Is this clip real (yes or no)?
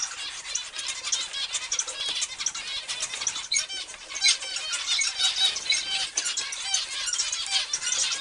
yes